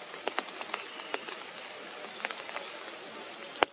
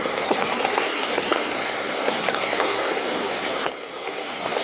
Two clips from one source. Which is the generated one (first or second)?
second